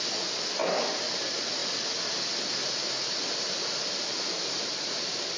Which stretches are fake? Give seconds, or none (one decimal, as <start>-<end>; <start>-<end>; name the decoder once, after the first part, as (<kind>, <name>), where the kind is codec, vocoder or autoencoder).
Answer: none